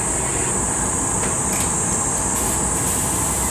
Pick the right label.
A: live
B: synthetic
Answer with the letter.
A